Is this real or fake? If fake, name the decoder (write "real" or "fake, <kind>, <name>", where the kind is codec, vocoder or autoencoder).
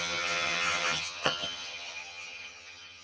fake, vocoder, HiFi-GAN